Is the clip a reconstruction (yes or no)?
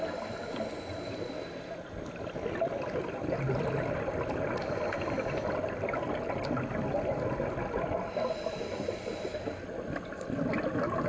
no